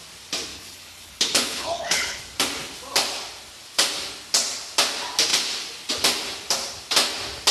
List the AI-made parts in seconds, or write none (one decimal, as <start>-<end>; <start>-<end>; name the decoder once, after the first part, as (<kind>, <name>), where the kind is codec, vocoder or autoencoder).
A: 0.5-2.2 (codec, HILCodec)